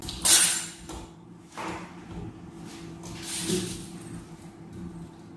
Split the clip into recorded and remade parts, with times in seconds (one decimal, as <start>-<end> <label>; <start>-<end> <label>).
0.0-5.4 recorded